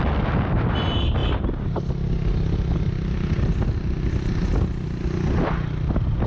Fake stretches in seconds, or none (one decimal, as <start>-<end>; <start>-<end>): none